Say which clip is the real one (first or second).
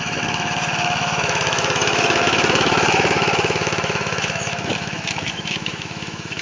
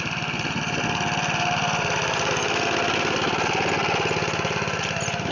second